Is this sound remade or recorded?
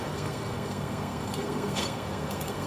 remade